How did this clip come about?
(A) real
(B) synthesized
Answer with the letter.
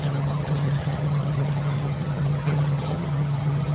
B